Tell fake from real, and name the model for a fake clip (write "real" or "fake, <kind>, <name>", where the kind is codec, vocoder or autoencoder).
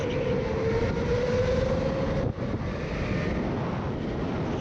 real